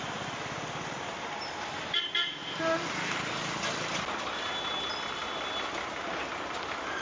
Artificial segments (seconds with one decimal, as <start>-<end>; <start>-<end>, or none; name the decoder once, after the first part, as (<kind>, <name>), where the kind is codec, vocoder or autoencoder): none